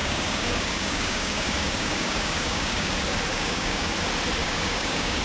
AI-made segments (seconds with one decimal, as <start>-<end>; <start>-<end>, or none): 0.0-2.9; 3.3-3.9; 4.4-5.2